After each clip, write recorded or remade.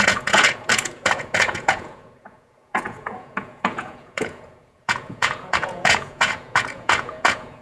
remade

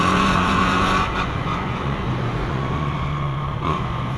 remade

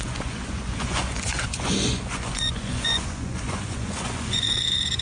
remade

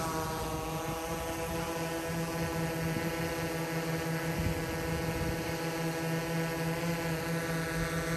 recorded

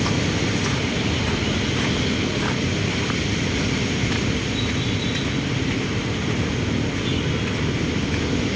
recorded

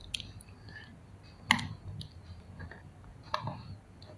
recorded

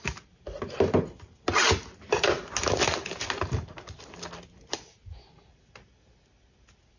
recorded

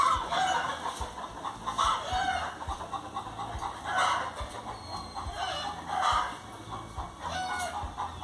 recorded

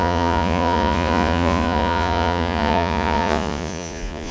remade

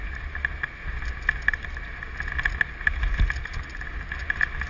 recorded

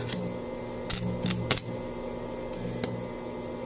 recorded